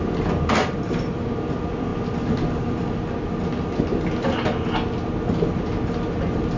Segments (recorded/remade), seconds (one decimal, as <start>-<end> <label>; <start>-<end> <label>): 0.0-6.6 recorded